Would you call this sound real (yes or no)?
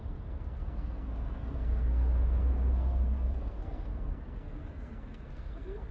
no